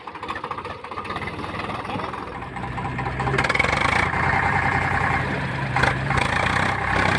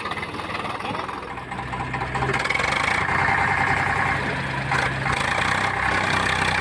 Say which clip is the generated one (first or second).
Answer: first